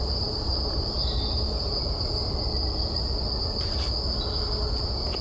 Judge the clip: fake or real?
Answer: real